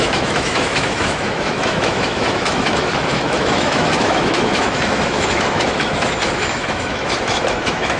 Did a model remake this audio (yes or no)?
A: yes